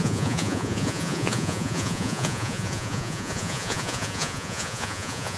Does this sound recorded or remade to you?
remade